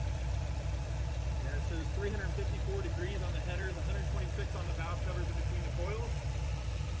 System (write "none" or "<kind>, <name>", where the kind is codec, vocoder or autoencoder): vocoder, BigVGAN v2